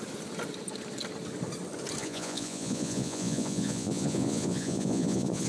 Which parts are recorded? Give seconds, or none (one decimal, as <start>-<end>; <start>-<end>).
0.0-2.0